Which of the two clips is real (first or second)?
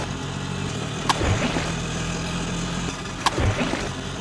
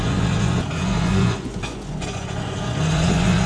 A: first